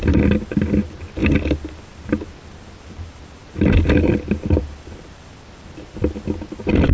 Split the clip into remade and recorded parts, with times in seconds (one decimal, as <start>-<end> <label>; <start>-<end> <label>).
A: 0.0-6.9 recorded